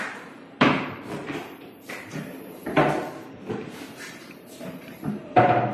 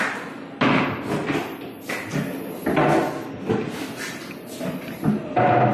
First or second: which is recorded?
second